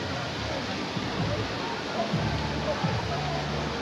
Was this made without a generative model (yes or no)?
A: yes